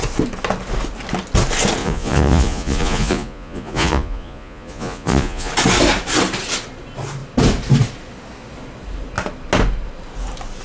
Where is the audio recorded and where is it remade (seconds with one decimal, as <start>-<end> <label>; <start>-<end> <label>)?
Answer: 0.0-1.8 recorded; 1.8-5.5 remade; 5.5-10.6 recorded